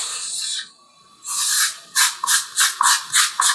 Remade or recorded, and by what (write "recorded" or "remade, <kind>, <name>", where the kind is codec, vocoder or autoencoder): recorded